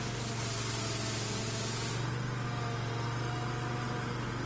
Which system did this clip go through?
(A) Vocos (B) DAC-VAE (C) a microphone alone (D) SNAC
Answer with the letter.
C